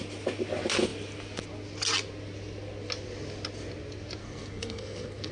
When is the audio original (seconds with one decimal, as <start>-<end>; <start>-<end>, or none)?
0.0-4.2